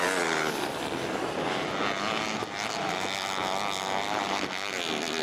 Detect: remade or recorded recorded